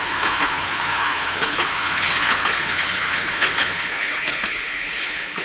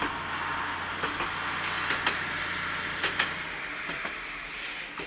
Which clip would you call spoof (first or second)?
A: first